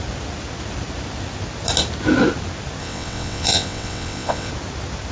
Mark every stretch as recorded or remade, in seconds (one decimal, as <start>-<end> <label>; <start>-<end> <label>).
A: 0.0-2.8 recorded; 2.8-4.5 remade; 4.5-5.1 recorded